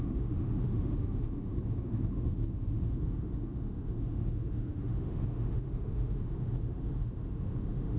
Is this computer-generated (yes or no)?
yes